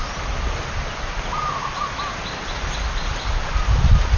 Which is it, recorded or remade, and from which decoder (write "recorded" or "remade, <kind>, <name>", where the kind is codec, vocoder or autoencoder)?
recorded